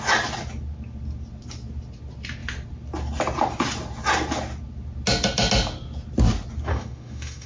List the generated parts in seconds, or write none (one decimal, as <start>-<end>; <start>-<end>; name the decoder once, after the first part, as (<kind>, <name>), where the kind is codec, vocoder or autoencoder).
6.7-7.5 (autoencoder, DAC-VAE)